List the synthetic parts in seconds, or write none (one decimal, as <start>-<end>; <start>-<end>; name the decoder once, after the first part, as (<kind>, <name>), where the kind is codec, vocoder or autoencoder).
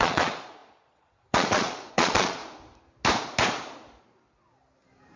0.0-2.4 (vocoder, Vocos)